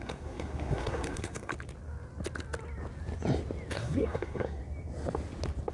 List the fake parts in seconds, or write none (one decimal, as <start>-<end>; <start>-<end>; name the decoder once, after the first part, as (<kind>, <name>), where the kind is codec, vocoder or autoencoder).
0.0-1.5 (codec, SNAC); 3.7-4.6

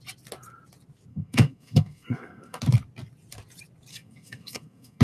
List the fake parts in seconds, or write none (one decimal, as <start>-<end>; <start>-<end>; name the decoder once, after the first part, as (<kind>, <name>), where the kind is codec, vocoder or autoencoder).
1.1-2.6 (codec, SNAC); 3.9-5.0

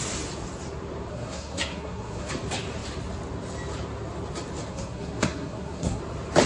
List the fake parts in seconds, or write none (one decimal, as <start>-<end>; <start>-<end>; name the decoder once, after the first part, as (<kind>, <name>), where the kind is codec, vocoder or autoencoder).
1.1-2.3 (codec, SNAC); 4.7-6.0

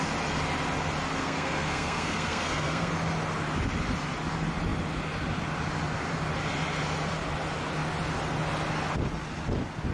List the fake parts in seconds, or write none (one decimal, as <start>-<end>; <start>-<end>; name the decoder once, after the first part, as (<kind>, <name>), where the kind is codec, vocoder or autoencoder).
1.2-2.9 (codec, SNAC)

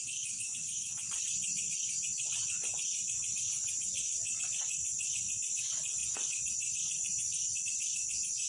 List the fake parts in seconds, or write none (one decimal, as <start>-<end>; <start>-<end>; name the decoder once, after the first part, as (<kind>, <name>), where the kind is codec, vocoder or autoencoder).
none

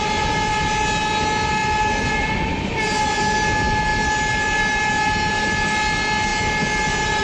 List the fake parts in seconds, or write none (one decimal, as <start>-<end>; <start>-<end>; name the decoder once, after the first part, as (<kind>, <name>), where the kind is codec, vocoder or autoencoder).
none

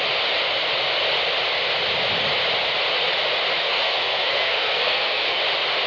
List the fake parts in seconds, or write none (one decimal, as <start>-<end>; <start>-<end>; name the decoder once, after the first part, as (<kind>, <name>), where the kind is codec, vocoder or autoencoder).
3.6-5.4 (codec, SNAC)

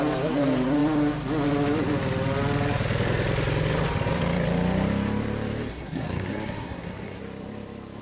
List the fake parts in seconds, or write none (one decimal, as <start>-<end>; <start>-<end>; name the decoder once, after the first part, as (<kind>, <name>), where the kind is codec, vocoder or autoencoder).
5.7-7.2 (codec, SNAC)